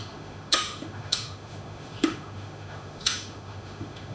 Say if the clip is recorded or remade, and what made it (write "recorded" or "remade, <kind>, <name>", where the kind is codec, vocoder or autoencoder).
remade, autoencoder, DAC-VAE